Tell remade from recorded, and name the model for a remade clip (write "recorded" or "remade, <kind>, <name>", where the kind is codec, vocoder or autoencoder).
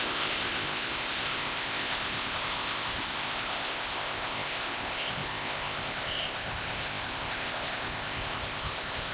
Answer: remade, codec, ZipCodec